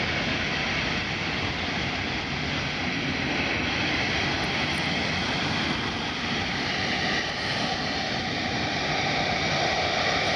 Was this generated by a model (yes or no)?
no